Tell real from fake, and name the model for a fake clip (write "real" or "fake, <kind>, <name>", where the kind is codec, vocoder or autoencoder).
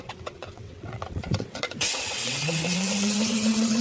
fake, vocoder, WaveNeXt